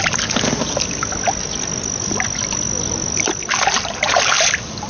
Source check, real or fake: real